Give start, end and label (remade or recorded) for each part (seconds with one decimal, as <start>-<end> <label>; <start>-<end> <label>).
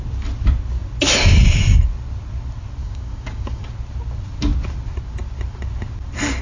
0.0-2.8 recorded; 2.8-3.6 remade; 3.6-6.4 recorded